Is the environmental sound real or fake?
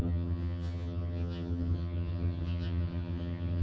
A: fake